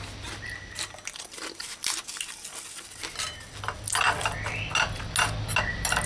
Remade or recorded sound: recorded